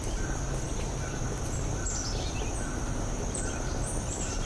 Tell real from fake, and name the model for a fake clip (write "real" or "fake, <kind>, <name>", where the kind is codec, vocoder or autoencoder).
real